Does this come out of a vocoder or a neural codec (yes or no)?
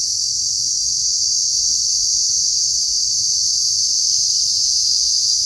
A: yes